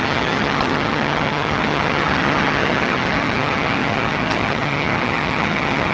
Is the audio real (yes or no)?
no